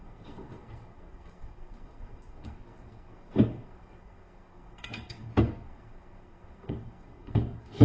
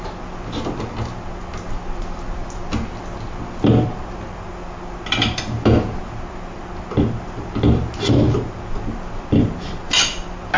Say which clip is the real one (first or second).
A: second